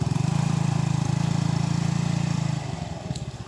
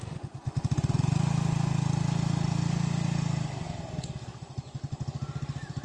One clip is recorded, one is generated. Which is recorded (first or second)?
second